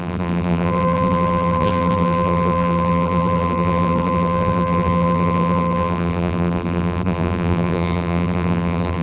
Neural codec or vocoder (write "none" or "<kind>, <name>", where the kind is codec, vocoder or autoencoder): vocoder, BigVGAN v2